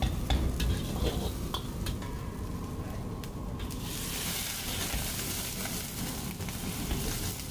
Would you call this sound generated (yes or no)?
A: no